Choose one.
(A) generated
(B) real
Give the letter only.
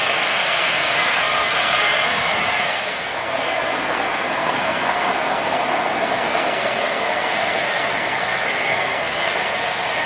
A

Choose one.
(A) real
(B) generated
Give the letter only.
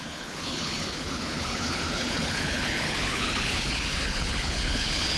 B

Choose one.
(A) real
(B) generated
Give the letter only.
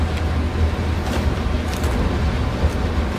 A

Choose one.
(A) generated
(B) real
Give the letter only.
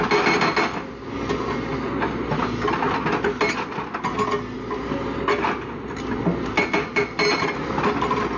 B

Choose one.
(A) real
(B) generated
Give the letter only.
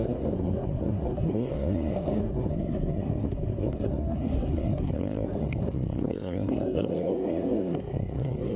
B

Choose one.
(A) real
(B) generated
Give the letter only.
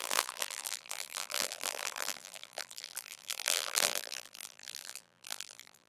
B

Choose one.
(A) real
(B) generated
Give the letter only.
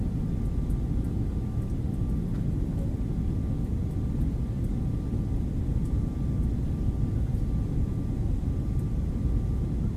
A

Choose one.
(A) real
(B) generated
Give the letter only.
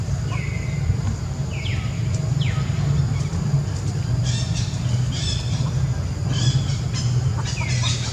A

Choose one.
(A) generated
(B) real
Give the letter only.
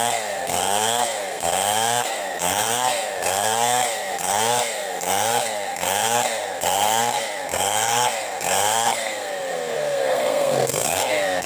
A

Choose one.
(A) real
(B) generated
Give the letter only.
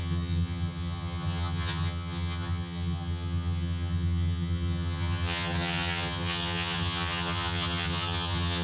B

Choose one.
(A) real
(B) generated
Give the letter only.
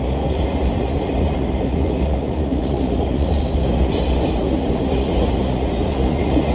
B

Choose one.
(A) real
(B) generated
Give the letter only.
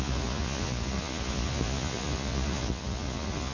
B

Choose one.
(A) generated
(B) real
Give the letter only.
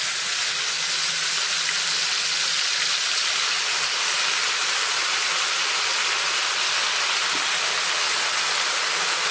B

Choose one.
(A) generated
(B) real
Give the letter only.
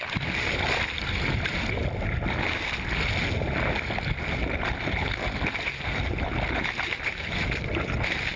B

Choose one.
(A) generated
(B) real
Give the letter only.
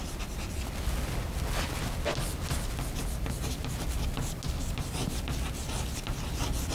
B